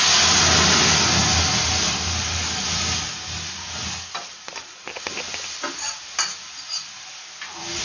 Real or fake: real